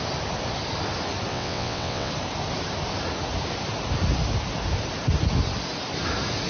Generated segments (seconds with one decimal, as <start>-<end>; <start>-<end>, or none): 1.3-2.1